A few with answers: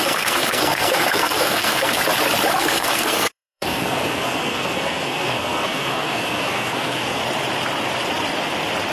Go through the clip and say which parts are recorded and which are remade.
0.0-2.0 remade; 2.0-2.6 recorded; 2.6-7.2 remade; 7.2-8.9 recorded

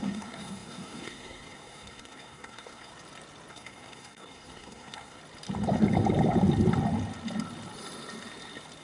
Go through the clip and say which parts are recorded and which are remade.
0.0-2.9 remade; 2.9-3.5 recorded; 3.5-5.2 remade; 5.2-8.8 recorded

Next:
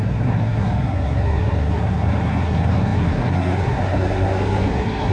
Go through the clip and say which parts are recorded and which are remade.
0.0-5.1 remade

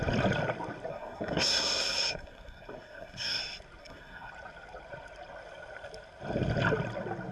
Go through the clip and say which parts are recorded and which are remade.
0.0-0.9 recorded; 0.9-3.4 remade; 3.4-3.8 recorded; 3.8-4.3 remade; 4.3-7.3 recorded

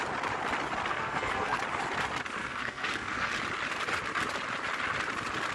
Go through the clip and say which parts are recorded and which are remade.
0.0-0.9 recorded; 0.9-1.6 remade; 1.6-2.4 recorded; 2.4-3.3 remade; 3.3-5.5 recorded

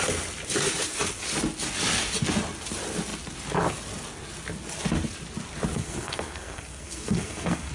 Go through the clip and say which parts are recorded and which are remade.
0.0-5.7 recorded; 5.7-7.7 remade